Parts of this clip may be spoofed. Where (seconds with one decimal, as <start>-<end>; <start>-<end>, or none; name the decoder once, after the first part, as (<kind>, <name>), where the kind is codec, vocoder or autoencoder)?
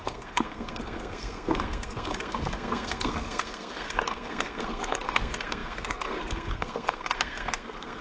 0.0-8.0 (codec, SNAC)